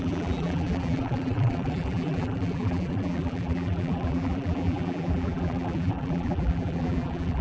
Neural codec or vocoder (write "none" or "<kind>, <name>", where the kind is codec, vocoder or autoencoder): vocoder, BigVGAN v2